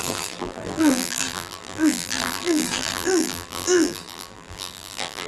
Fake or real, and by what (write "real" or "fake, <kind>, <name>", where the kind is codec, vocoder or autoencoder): fake, vocoder, BigVGAN v2